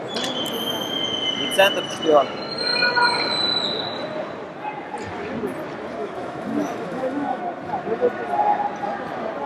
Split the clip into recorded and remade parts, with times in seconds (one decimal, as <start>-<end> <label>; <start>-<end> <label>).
0.0-6.0 recorded; 6.0-7.4 remade; 7.4-9.5 recorded